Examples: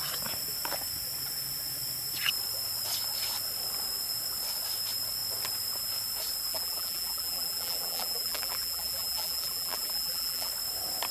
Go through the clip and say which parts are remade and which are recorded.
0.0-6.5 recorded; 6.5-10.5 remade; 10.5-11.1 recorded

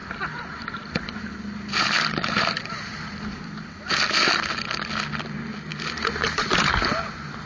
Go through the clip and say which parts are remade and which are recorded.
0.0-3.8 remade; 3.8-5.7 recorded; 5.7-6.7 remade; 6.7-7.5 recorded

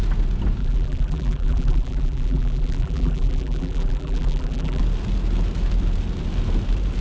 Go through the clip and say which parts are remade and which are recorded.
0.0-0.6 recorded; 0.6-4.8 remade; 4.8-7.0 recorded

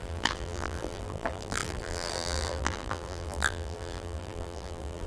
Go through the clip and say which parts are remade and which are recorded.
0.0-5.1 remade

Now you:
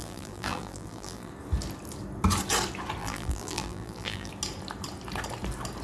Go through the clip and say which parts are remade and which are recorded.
0.0-1.3 remade; 1.3-3.0 recorded; 3.0-4.3 remade; 4.3-5.8 recorded

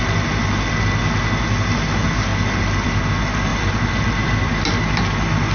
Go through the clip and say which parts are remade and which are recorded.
0.0-2.3 recorded; 2.3-3.1 remade; 3.1-3.5 recorded; 3.5-4.3 remade; 4.3-5.5 recorded

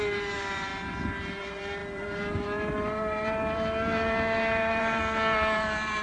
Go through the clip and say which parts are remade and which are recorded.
0.0-0.7 remade; 0.7-1.4 recorded; 1.4-6.0 remade